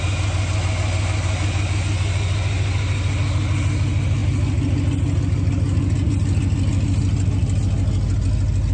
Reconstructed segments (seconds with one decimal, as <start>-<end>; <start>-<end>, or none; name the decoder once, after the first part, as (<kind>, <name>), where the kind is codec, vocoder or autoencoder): none